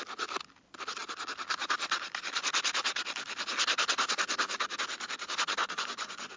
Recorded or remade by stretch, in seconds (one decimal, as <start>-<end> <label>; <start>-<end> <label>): 0.0-5.6 recorded; 5.6-6.4 remade